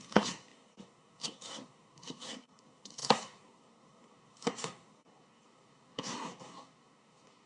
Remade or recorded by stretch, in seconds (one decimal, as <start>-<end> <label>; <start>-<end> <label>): 0.0-7.5 remade